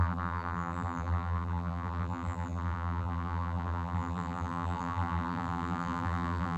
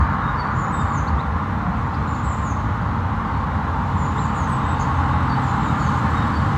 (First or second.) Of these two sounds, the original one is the second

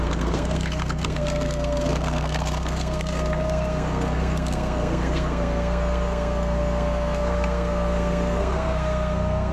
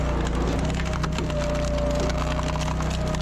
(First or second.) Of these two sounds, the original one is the second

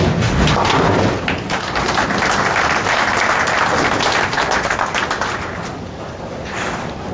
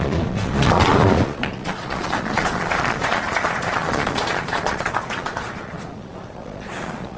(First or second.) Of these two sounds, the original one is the first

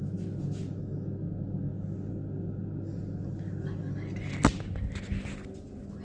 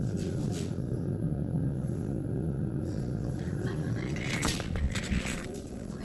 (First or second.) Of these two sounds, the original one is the first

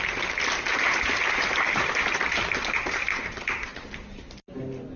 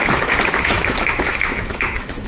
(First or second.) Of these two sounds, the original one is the first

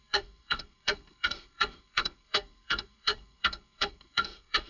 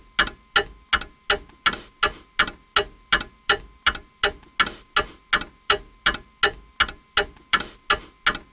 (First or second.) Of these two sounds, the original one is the second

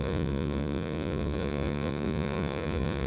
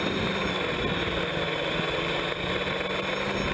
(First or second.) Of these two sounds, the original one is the second